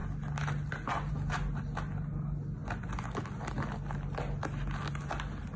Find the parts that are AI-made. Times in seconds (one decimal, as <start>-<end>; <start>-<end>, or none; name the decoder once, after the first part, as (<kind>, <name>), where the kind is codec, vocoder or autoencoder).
none